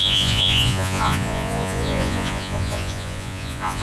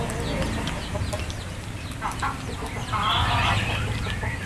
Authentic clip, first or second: second